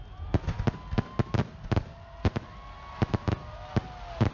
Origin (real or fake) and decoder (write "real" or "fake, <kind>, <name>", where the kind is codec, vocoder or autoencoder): real